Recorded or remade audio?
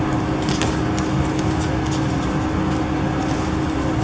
recorded